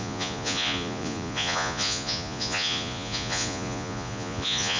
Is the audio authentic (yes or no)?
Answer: no